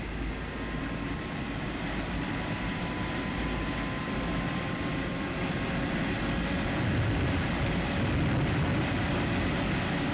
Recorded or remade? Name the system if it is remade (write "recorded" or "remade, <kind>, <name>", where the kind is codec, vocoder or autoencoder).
recorded